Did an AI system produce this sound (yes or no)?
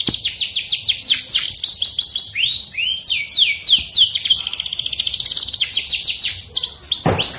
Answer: no